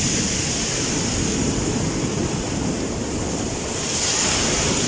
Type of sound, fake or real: fake